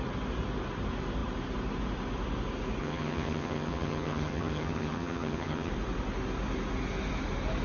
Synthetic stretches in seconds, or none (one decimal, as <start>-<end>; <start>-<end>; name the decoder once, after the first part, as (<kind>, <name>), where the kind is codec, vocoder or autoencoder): 2.8-5.7 (vocoder, HiFi-GAN)